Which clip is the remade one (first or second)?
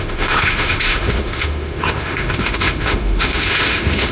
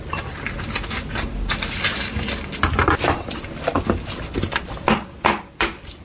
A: first